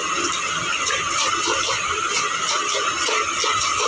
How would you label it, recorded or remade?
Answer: recorded